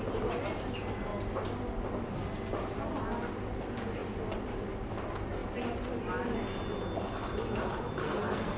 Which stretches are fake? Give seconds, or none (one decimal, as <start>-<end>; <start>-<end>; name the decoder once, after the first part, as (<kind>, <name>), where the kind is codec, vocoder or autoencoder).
8.0-8.6 (codec, SNAC)